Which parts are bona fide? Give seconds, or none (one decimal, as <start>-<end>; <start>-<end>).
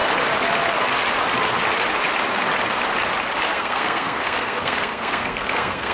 0.0-3.5